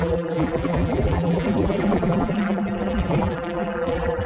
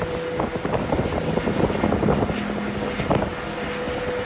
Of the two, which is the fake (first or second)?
first